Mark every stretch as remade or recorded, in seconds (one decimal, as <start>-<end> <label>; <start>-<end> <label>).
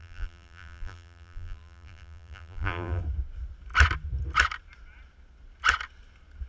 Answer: 0.0-3.0 remade; 3.0-6.5 recorded